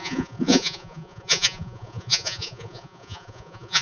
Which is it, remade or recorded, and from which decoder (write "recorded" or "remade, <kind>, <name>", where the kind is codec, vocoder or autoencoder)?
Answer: remade, vocoder, Vocos